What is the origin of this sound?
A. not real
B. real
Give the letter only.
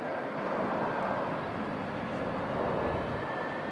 B